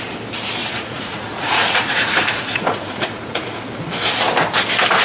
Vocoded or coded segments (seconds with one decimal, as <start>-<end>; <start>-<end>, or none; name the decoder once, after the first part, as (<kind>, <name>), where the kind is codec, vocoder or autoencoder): 0.6-3.6 (vocoder, Vocos)